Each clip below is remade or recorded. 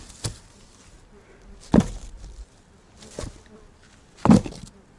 recorded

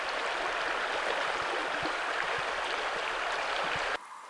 recorded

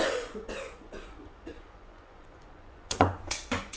remade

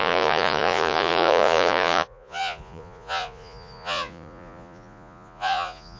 remade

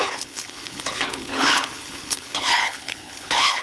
remade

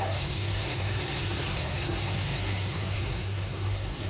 remade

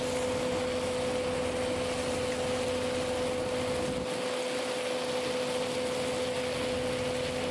recorded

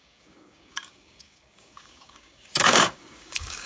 remade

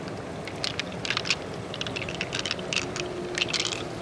recorded